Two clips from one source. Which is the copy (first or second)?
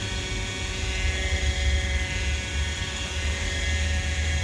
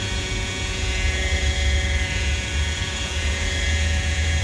second